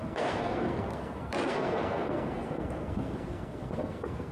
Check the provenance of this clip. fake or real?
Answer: fake